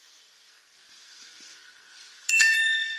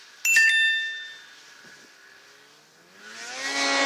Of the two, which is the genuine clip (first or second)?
second